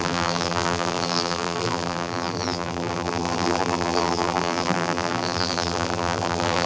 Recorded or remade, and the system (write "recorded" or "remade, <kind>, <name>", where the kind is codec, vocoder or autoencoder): remade, vocoder, BigVGAN v2